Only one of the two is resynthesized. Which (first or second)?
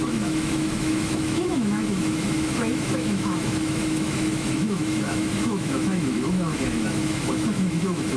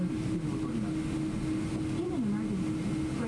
first